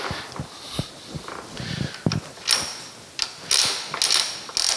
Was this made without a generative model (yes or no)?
yes